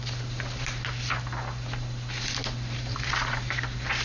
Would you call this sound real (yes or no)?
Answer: yes